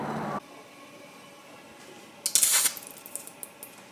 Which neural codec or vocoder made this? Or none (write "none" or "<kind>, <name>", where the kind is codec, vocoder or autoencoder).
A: none